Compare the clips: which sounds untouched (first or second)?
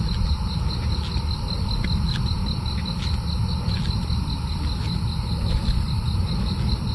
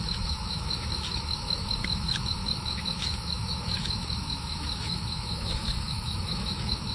first